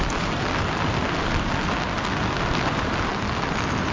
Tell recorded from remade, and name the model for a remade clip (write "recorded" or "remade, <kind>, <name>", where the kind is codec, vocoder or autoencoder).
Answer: recorded